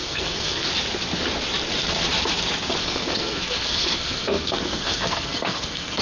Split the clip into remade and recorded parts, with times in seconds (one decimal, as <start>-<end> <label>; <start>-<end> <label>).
0.0-0.7 remade; 0.7-2.8 recorded; 2.8-6.0 remade